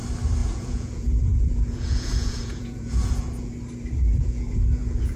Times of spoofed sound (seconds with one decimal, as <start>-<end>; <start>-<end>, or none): 0.4-3.5; 4.2-5.2